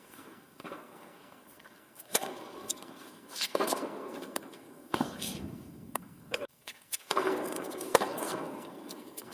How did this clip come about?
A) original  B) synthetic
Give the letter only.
B